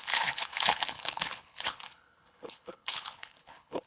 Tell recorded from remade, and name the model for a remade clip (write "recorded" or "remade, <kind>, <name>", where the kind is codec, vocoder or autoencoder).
remade, codec, HILCodec